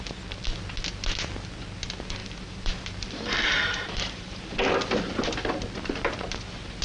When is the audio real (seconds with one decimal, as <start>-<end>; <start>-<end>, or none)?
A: 0.0-2.2; 4.4-6.8